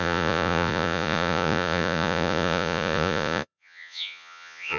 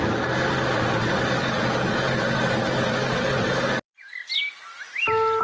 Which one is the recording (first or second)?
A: second